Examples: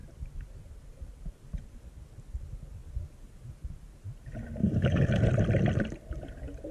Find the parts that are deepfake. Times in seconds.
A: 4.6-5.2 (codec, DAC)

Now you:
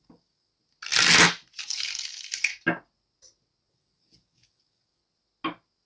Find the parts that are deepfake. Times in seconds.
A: 0.0-0.5 (codec, DAC); 1.6-2.5; 3.7-5.0

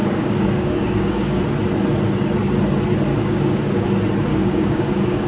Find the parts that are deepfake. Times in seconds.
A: 0.0-1.4 (codec, DAC); 3.1-3.9; 4.3-5.3

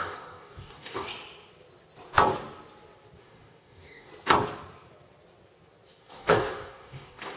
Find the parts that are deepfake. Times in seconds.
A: 0.0-1.1 (codec, DAC); 3.2-4.1; 6.0-7.4